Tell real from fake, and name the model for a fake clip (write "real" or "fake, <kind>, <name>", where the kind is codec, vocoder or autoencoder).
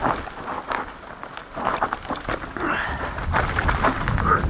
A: real